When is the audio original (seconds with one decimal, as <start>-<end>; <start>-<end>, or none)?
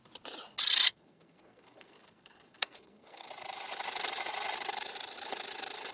0.0-0.9; 3.3-5.9